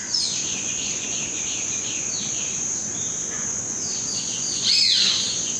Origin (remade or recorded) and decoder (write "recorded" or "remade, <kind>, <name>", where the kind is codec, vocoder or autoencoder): remade, vocoder, Vocos